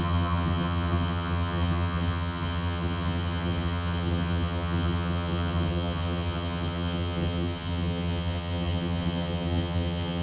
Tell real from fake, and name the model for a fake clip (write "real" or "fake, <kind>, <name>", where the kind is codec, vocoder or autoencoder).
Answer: fake, vocoder, HiFi-GAN